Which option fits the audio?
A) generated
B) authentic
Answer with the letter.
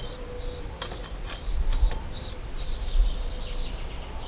B